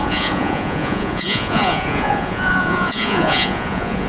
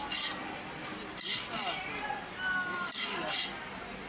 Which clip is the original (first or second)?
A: second